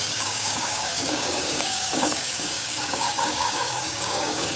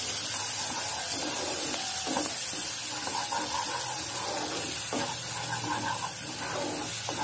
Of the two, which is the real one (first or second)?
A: second